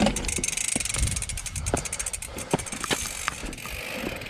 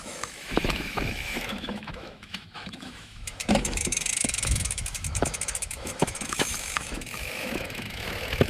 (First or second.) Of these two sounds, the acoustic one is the first